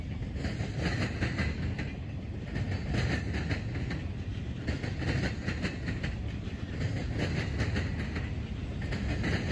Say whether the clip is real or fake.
real